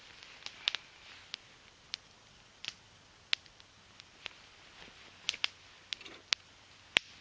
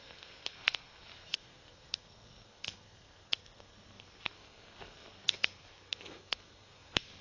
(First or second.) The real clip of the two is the first